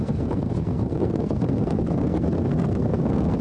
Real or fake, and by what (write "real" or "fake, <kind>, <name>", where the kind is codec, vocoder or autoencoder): fake, codec, SNAC